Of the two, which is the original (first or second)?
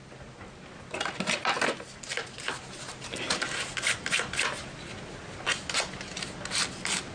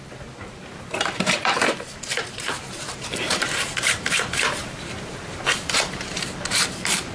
first